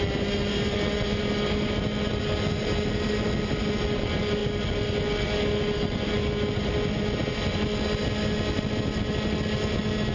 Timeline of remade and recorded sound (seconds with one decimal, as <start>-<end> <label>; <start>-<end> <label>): 0.0-10.1 recorded